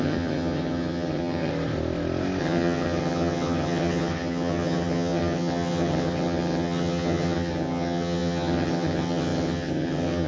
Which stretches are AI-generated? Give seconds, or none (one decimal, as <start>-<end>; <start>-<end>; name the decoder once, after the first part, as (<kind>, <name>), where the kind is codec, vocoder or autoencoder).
0.0-1.5 (vocoder, HiFi-GAN); 2.4-10.3

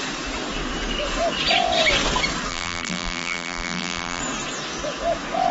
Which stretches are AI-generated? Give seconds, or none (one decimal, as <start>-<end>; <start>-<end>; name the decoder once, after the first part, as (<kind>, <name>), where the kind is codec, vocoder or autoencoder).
2.5-4.2 (vocoder, BigVGAN v2)

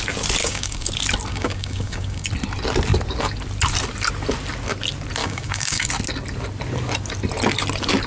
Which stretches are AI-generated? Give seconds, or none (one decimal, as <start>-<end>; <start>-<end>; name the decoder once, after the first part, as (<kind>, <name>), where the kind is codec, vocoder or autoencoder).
0.4-0.9 (codec, DAC); 1.3-2.3; 5.2-5.9

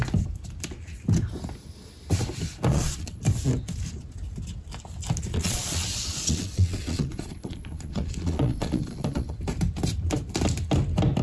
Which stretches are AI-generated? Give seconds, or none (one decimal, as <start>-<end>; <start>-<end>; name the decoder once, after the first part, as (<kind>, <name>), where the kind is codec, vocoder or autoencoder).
2.7-3.2 (vocoder, Vocos); 5.3-9.3